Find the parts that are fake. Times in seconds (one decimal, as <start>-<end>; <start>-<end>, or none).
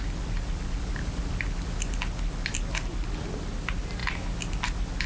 none